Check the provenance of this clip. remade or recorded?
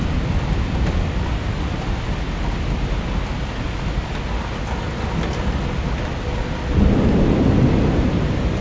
recorded